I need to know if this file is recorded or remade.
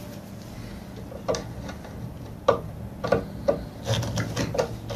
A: recorded